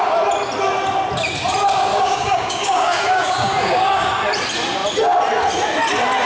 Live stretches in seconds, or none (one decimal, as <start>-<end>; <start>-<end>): 0.0-1.9; 4.1-6.3